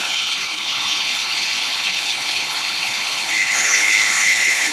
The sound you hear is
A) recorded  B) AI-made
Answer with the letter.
B